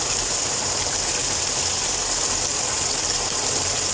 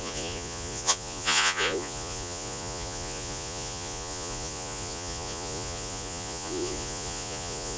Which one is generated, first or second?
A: second